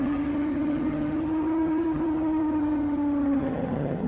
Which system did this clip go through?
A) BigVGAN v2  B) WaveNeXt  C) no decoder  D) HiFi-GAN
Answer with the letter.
D